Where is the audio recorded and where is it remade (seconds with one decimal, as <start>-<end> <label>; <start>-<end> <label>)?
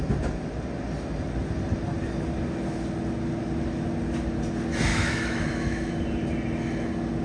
0.0-4.9 recorded; 4.9-5.9 remade; 5.9-7.2 recorded